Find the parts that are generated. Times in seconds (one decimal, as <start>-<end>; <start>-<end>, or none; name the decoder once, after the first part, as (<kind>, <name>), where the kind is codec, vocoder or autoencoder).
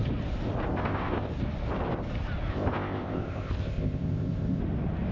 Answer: 0.7-1.3 (codec, ZipCodec); 2.5-4.6